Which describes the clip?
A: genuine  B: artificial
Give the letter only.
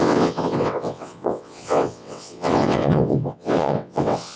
B